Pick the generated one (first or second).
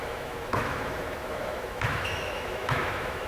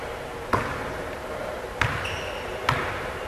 first